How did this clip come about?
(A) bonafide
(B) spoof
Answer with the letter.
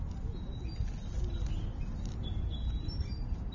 A